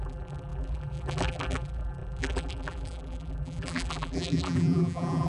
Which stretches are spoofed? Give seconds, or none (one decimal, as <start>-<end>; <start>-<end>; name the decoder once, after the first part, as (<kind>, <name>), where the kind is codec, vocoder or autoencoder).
0.0-5.3 (vocoder, BigVGAN v2)